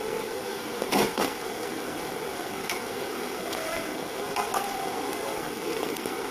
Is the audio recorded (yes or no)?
no